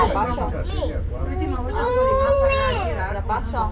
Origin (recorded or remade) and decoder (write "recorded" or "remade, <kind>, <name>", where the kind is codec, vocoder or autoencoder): remade, vocoder, BigVGAN v2